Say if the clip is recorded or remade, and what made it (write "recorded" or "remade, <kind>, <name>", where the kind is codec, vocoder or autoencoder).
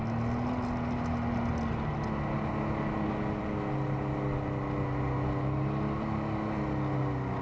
recorded